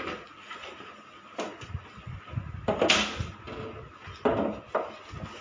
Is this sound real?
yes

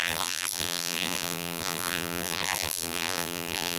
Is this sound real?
no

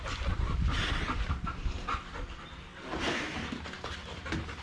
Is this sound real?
yes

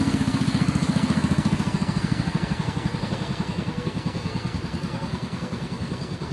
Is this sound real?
no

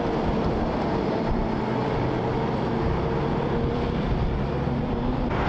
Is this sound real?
no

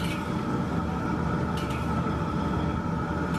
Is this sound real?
yes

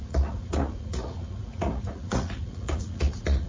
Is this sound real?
no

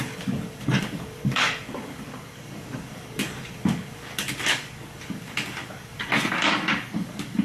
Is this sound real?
no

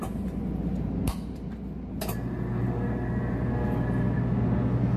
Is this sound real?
yes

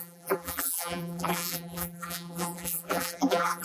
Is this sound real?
no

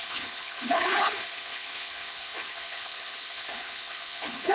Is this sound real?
no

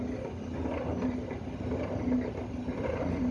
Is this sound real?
yes